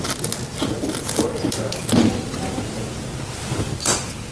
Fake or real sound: real